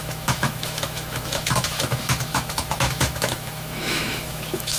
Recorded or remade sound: remade